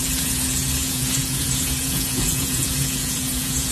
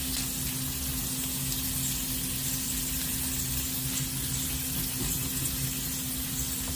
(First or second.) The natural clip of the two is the second